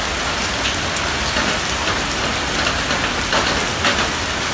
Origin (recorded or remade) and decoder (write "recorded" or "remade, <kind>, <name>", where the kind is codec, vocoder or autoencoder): recorded